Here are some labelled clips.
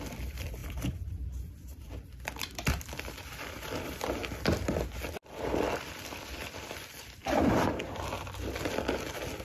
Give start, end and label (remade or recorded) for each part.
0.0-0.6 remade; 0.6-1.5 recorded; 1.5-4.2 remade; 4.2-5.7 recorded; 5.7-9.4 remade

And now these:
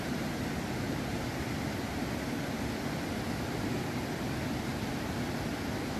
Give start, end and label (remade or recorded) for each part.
0.0-1.1 recorded; 1.1-1.6 remade; 1.6-6.0 recorded

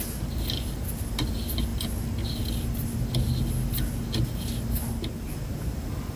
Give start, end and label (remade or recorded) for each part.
0.0-6.2 recorded

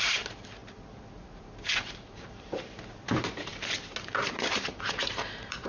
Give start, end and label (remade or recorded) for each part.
0.0-3.5 remade; 3.5-4.0 recorded; 4.0-5.7 remade

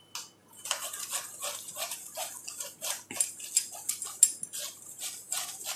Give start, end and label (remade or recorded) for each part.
0.0-5.8 recorded

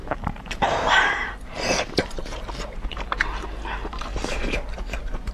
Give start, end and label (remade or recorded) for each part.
0.0-3.2 remade; 3.2-3.8 recorded; 3.8-5.3 remade